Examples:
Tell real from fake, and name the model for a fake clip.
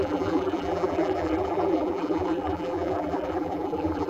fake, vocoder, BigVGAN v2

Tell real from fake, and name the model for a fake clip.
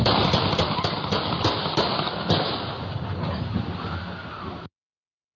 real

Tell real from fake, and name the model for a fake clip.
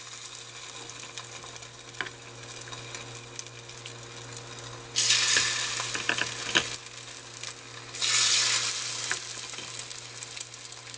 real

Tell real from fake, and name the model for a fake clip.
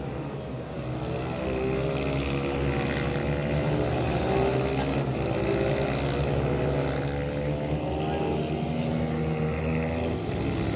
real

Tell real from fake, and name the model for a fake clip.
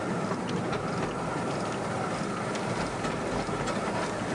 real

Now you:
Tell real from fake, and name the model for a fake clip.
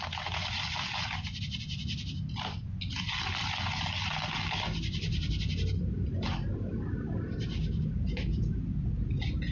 real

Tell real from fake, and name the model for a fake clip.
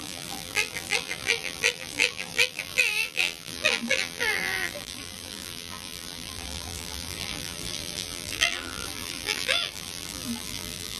fake, vocoder, BigVGAN v2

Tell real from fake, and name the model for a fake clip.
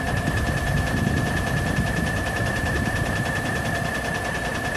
real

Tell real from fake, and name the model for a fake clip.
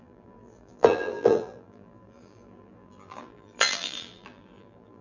fake, vocoder, BigVGAN v2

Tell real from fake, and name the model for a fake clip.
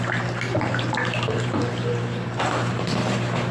fake, vocoder, BigVGAN v2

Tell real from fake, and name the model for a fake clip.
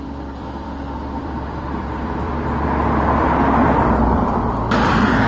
fake, vocoder, BigVGAN v2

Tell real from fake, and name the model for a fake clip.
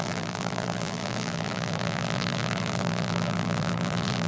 fake, vocoder, BigVGAN v2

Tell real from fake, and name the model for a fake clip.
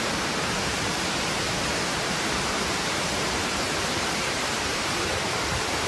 fake, vocoder, BigVGAN v2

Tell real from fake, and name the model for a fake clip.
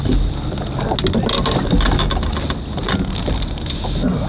real